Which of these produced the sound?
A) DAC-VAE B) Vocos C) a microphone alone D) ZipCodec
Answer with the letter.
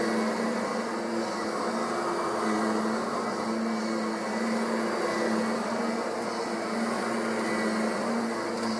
C